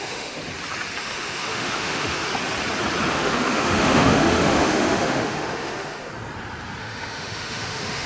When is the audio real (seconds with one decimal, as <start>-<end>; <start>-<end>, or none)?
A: 0.4-1.0; 2.3-3.1; 6.1-6.8